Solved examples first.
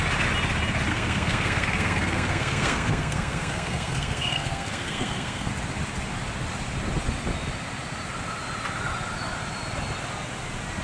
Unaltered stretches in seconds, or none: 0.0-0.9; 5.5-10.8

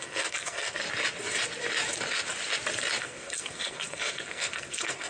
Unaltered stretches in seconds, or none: 0.8-3.0

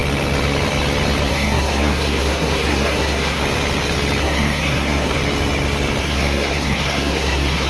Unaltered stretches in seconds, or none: 0.0-1.3; 3.4-4.2; 5.2-6.0

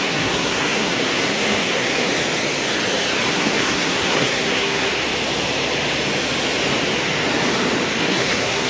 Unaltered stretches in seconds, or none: 2.1-3.3; 4.9-8.0

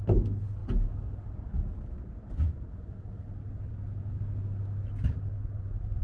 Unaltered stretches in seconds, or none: 0.0-6.0

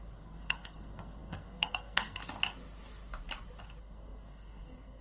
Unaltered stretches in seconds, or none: 2.2-3.8

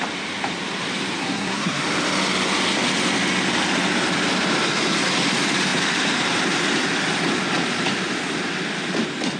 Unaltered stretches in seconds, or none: 0.0-1.2; 1.8-9.4